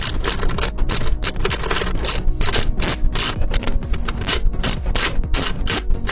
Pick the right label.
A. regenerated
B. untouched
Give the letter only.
B